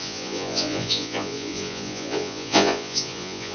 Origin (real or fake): fake